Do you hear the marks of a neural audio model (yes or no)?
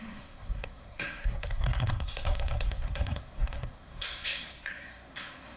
yes